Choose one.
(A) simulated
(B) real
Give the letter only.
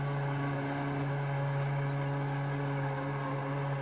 B